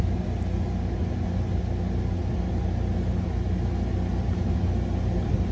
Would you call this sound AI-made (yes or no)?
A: no